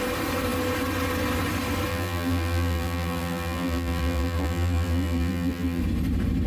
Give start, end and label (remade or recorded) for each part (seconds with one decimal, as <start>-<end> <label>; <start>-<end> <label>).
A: 0.0-1.9 recorded; 1.9-5.8 remade; 5.8-6.5 recorded